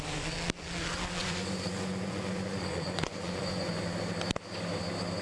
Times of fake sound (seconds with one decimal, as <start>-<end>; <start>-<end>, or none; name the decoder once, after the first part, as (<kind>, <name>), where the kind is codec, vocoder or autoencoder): 1.2-3.7 (vocoder, Vocos)